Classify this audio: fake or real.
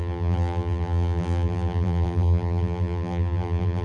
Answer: fake